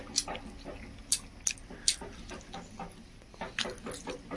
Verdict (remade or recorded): recorded